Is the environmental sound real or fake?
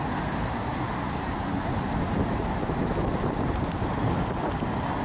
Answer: real